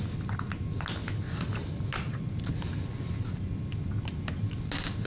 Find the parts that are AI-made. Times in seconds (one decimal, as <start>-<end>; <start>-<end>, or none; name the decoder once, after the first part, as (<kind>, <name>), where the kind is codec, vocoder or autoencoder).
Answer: none